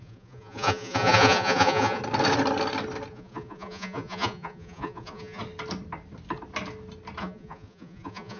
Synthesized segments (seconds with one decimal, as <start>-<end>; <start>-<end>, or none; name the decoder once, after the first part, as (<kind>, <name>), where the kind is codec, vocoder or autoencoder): 0.0-2.0 (vocoder, Vocos); 3.1-5.4; 7.2-8.4

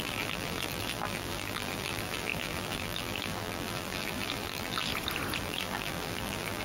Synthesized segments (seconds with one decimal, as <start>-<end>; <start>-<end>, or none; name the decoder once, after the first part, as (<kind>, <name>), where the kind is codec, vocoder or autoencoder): 0.0-4.9 (vocoder, BigVGAN v2); 5.4-6.6

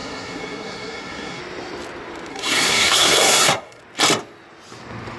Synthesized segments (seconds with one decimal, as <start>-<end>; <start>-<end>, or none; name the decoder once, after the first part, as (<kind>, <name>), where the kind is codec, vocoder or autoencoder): 0.0-1.4 (codec, SNAC); 2.3-3.8

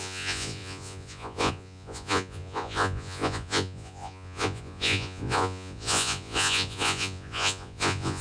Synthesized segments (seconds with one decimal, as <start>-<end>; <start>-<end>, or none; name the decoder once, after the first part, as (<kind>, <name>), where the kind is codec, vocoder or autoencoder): 0.0-8.2 (vocoder, Vocos)